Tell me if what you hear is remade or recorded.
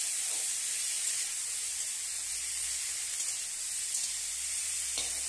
recorded